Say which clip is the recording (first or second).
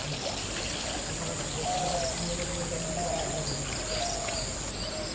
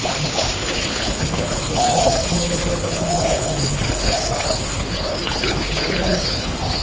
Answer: first